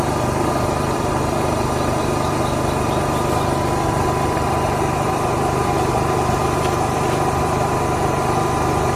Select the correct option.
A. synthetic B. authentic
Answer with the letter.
A